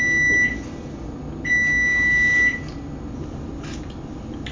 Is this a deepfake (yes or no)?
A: no